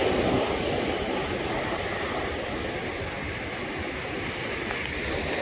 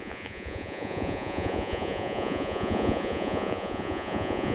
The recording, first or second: first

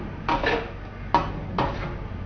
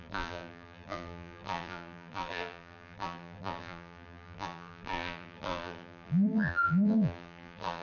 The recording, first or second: first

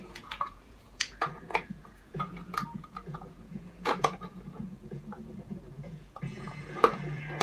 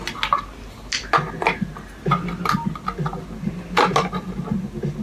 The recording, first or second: second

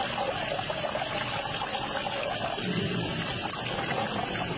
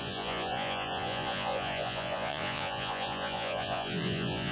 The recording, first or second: first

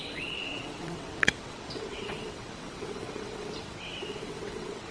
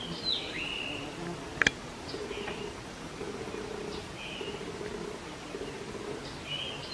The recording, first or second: second